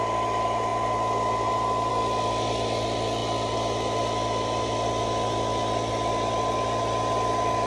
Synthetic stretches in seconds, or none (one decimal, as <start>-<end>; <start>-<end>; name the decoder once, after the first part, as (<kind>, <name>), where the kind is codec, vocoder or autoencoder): none